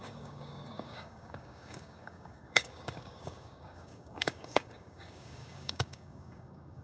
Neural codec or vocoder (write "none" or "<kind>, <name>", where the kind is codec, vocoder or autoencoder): codec, DAC